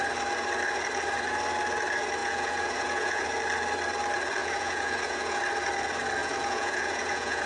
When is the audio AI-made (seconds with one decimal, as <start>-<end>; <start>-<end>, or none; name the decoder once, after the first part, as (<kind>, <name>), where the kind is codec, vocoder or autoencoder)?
2.2-3.2 (vocoder, Vocos); 4.4-5.4; 6.2-7.5